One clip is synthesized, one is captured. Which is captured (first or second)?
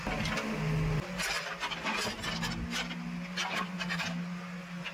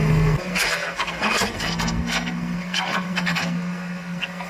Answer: first